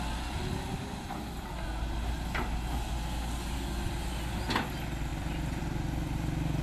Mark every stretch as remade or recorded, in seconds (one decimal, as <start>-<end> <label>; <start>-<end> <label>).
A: 0.0-6.6 recorded